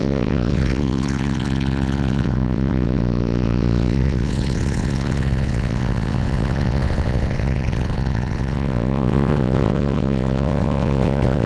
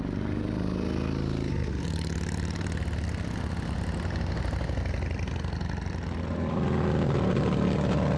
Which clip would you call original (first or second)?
second